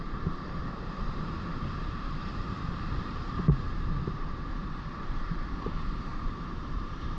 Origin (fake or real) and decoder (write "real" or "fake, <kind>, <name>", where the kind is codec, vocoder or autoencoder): fake, vocoder, BigVGAN v2